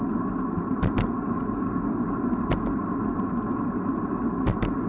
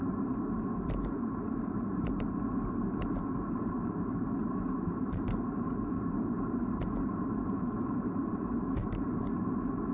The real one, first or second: first